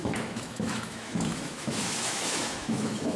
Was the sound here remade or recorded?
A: remade